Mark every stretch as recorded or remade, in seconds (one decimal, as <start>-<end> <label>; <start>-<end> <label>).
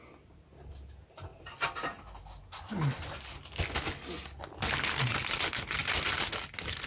0.0-6.9 recorded